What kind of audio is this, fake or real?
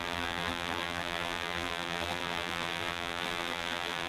fake